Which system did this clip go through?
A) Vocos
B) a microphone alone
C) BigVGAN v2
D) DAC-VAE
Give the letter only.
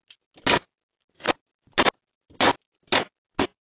B